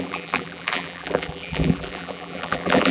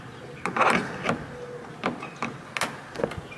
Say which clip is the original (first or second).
second